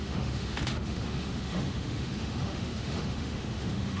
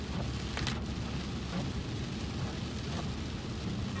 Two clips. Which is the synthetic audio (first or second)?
first